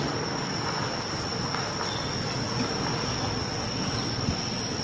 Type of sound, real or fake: real